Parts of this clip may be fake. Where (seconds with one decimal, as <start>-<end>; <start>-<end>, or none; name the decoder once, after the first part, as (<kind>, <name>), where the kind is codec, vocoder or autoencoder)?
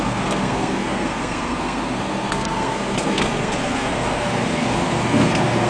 0.0-5.7 (codec, SNAC)